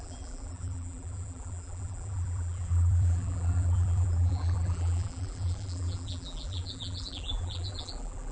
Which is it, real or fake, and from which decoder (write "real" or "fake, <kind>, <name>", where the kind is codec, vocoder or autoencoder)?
fake, vocoder, BigVGAN v2